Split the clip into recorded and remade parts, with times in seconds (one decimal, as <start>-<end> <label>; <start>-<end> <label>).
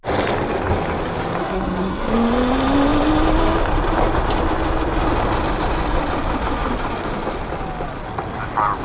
0.0-1.4 recorded; 1.4-2.1 remade; 2.1-8.8 recorded